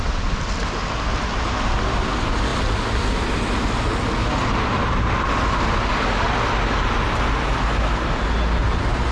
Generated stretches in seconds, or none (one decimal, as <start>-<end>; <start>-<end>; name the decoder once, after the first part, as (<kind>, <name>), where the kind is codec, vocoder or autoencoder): none